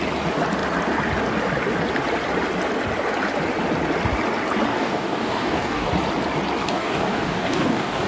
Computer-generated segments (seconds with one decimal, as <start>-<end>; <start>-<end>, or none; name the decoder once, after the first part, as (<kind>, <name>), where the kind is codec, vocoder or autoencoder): 4.7-5.9 (codec, DAC); 6.6-8.1

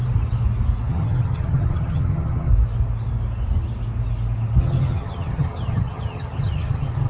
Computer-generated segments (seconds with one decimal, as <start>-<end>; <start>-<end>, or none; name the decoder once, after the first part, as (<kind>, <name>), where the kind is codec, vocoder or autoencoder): 0.9-2.5 (vocoder, HiFi-GAN); 4.6-7.1

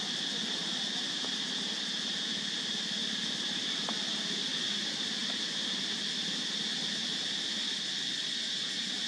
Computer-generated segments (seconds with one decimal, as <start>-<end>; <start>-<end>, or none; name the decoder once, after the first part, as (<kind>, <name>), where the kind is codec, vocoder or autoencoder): none

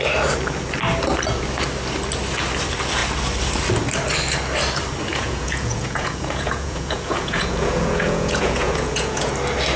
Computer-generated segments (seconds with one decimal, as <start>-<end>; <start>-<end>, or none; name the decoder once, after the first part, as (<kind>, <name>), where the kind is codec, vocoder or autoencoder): 5.1-9.3 (vocoder, Vocos)

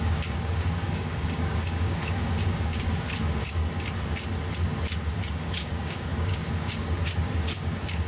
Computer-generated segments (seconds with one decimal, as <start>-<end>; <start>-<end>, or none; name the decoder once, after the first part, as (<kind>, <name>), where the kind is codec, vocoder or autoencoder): 0.0-3.6 (codec, DAC); 5.3-8.1

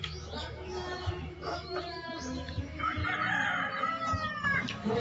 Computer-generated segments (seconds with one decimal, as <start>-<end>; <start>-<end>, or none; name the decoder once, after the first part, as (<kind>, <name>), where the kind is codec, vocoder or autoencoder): 0.0-3.0 (autoencoder, DAC-VAE); 4.6-5.0

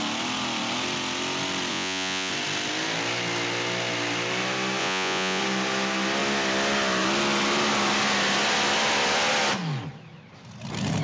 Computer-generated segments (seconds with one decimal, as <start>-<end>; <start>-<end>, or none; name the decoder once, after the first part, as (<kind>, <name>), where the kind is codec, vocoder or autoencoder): 1.7-2.3 (vocoder, Vocos); 4.8-5.4